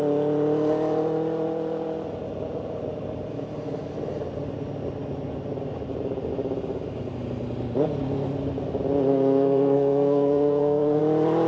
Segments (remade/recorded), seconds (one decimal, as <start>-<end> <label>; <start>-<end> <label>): 0.0-9.1 recorded; 9.1-11.0 remade; 11.0-11.5 recorded